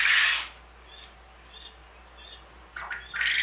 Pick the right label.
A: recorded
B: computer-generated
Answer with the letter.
A